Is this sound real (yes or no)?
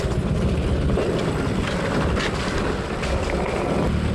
yes